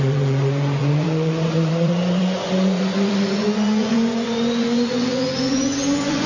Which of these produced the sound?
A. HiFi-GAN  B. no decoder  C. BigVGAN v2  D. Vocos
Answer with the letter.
D